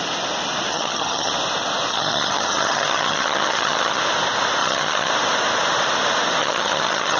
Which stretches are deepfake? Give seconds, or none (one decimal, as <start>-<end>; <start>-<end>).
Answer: 0.7-1.3; 1.9-4.0; 4.6-5.1; 6.4-7.2